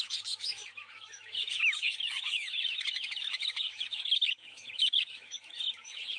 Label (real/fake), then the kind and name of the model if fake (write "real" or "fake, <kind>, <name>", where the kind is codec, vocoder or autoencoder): fake, autoencoder, DAC-VAE